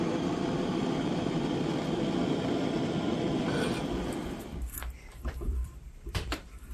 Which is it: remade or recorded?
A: remade